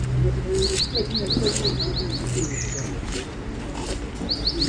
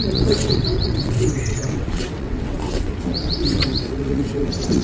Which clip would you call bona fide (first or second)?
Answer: first